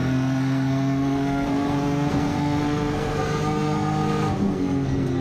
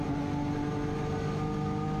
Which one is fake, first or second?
first